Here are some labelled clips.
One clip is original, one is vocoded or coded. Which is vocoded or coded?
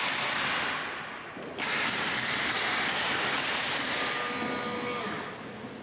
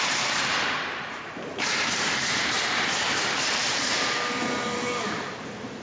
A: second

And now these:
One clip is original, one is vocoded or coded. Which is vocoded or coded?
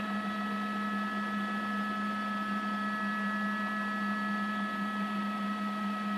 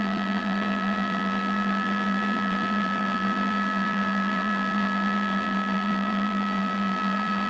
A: second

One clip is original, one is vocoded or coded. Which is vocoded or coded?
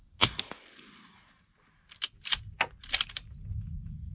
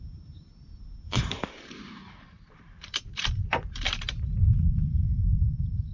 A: second